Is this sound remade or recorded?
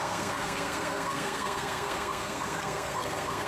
remade